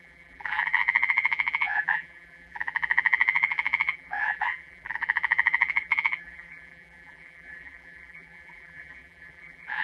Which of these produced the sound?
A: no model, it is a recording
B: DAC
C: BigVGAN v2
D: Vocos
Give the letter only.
C